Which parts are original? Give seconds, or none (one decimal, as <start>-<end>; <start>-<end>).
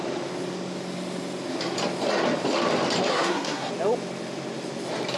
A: 0.0-3.1; 3.7-5.2